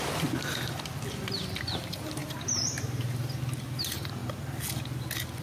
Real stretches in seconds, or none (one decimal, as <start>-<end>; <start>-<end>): 0.0-2.2; 3.4-5.4